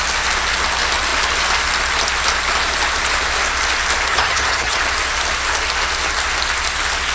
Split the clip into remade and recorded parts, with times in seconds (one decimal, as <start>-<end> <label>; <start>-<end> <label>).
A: 0.0-4.1 recorded; 4.1-4.8 remade; 4.8-7.1 recorded